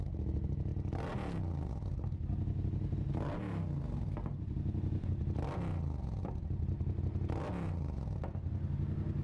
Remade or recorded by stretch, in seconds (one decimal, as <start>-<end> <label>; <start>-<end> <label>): 0.0-9.2 recorded